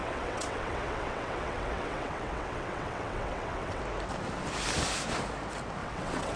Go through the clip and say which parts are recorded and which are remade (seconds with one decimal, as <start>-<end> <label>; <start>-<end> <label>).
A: 0.0-3.8 remade; 3.8-5.8 recorded; 5.8-6.4 remade